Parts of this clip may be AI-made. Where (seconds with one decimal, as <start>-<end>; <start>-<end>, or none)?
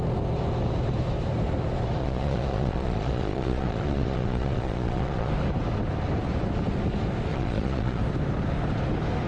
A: 2.0-5.3; 7.3-8.0